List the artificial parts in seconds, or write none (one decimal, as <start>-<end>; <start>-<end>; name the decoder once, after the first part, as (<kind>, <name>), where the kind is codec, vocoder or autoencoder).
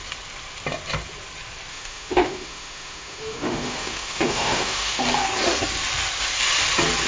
1.7-5.0 (autoencoder, DAC-VAE)